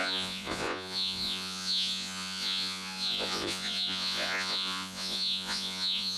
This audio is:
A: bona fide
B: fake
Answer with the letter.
B